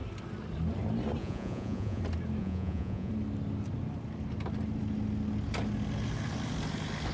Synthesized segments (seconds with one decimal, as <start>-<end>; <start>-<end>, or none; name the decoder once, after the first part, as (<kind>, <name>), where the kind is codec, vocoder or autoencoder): 1.2-2.0 (vocoder, Vocos); 2.4-3.1